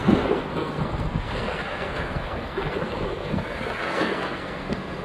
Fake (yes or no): yes